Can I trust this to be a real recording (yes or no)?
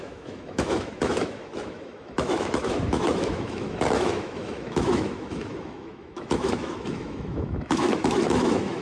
no